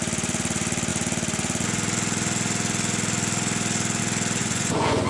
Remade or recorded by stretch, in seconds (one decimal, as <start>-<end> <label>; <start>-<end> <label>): 0.0-4.4 recorded; 4.4-5.1 remade

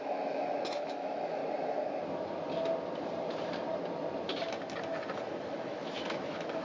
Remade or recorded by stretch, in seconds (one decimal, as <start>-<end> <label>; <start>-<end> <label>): 0.0-1.4 remade; 1.4-5.4 recorded; 5.4-6.6 remade